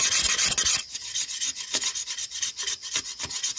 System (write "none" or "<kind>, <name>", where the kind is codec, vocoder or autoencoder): none